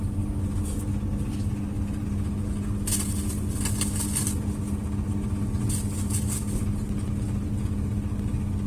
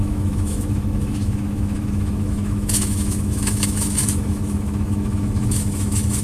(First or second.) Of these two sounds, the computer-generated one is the second